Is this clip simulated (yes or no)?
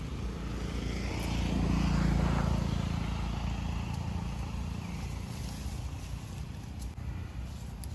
no